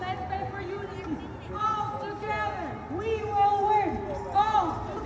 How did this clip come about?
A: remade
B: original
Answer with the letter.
B